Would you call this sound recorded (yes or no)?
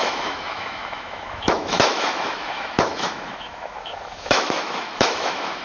no